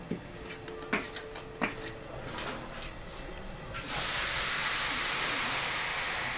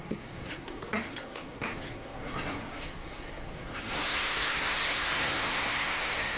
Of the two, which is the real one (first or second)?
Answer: first